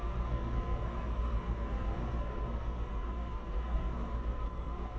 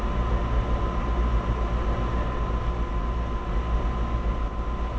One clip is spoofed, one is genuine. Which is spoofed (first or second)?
first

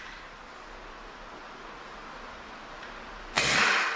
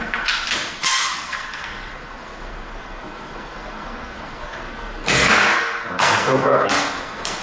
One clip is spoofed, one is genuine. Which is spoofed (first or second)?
second